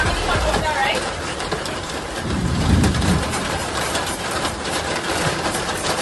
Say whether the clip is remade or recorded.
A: remade